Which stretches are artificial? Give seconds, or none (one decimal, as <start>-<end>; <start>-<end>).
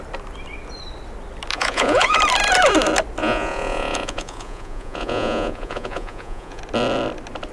1.5-2.2; 3.2-6.6